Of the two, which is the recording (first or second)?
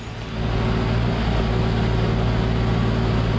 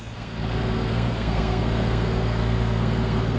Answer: first